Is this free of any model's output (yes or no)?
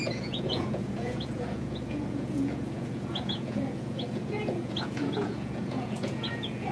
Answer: no